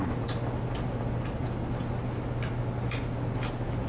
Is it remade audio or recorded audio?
recorded